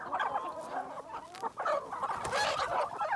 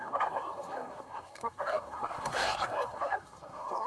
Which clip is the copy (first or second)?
second